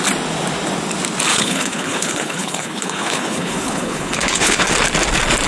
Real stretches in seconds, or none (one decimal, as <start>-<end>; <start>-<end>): 0.0-1.3; 4.6-5.5